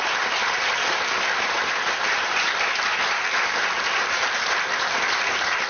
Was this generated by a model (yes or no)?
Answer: no